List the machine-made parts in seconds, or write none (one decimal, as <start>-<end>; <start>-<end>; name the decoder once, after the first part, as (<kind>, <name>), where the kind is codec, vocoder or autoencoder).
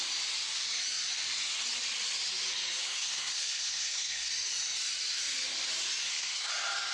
2.8-4.3 (codec, SNAC); 6.0-6.5